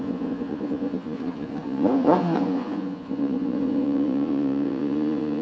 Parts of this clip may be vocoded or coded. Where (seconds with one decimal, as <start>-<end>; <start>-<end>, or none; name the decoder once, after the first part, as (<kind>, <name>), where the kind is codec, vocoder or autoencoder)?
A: 0.0-5.4 (vocoder, Vocos)